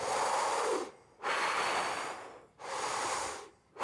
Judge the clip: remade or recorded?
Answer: recorded